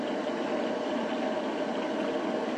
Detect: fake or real real